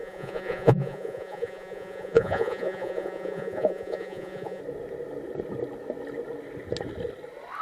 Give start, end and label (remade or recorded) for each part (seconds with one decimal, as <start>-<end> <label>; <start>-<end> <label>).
0.0-4.6 remade; 4.6-7.6 recorded